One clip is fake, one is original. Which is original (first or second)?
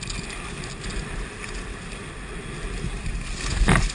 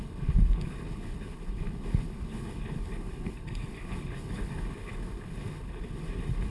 first